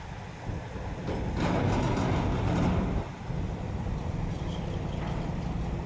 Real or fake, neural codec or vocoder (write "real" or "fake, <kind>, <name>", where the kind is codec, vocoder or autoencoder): real